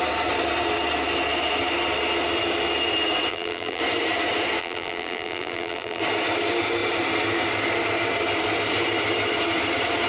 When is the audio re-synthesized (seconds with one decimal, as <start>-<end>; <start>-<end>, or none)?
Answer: 3.3-3.8; 4.6-6.0